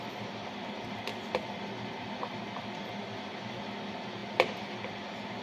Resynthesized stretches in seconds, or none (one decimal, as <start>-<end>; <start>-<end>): none